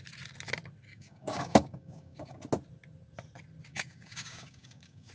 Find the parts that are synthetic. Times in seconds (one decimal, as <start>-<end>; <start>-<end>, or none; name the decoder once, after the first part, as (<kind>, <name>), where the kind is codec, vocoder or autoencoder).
0.9-2.4 (codec, DAC); 3.7-5.1

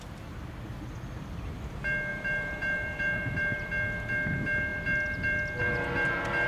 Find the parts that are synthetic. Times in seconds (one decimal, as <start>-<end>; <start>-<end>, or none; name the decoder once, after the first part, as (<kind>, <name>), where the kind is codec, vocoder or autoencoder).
2.1-3.7 (vocoder, BigVGAN v2)

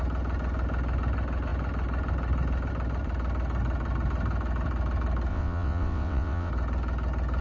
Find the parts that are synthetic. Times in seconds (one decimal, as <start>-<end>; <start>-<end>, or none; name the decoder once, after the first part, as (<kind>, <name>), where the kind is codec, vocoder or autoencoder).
5.3-6.5 (vocoder, WaveNeXt)

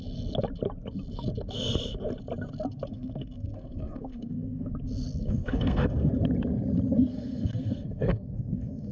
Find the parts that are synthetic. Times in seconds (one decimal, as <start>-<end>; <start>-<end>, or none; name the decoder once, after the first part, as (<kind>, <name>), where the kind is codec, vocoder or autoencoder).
2.9-4.7 (codec, SNAC); 5.2-6.1; 7.1-8.9

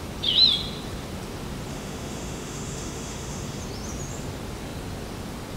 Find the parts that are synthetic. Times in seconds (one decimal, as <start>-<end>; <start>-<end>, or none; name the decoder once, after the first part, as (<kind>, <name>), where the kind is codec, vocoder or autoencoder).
1.7-3.6 (autoencoder, DAC-VAE)

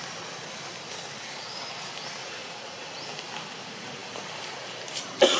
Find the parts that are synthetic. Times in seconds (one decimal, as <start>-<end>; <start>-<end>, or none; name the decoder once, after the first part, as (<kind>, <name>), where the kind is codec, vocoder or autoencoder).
2.2-2.9 (vocoder, Vocos)

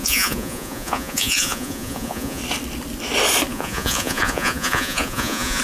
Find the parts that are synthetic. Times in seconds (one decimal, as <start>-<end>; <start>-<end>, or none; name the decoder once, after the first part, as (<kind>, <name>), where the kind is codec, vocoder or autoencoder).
0.0-2.4 (vocoder, Vocos); 3.5-5.6

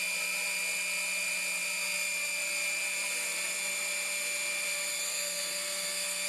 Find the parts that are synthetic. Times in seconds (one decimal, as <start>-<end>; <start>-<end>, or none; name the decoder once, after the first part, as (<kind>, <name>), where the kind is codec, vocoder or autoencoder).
5.0-6.3 (codec, SNAC)